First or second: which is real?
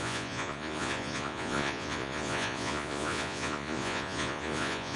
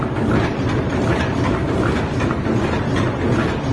second